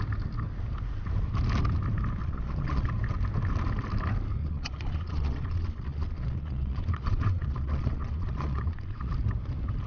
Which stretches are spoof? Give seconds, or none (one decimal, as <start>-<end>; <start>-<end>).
2.2-2.9; 4.4-9.1